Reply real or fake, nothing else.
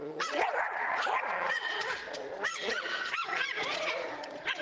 fake